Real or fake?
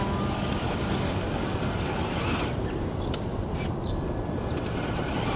real